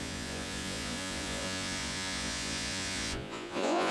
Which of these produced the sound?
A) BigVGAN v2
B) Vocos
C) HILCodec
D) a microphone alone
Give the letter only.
B